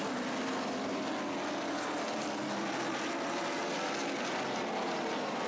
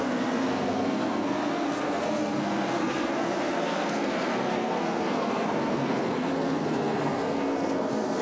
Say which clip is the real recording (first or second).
first